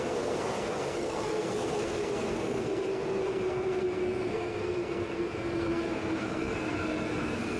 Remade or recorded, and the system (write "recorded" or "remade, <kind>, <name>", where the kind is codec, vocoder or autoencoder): remade, codec, SNAC